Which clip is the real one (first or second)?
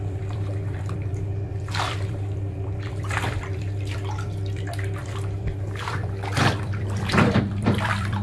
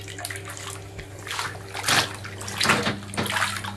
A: second